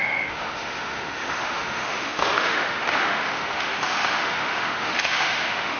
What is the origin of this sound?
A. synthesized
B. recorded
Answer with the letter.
A